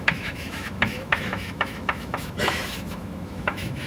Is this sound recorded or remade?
remade